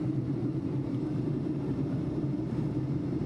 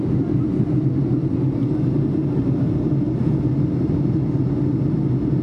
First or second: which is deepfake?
first